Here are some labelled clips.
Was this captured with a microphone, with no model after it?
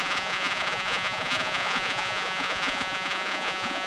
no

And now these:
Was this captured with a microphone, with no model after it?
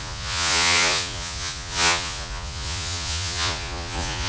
no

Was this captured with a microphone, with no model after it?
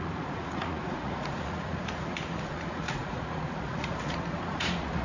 no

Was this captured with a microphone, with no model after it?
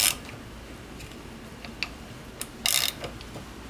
yes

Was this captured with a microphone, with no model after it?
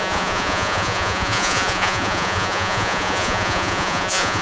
no